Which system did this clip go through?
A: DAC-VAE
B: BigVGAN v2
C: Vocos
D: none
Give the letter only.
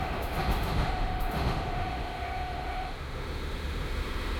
A